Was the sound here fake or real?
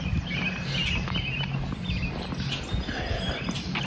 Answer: real